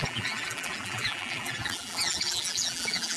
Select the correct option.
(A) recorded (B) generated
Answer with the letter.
B